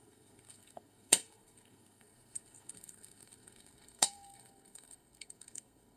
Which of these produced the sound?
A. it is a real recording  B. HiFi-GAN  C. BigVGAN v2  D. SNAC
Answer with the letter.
D